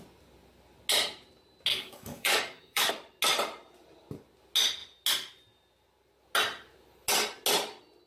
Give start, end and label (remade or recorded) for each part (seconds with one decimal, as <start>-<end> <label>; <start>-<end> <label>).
0.0-1.7 recorded; 1.7-2.9 remade; 2.9-8.1 recorded